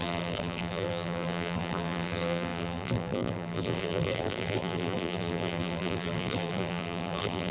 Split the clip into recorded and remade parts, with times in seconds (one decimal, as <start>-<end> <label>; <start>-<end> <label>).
0.0-7.5 remade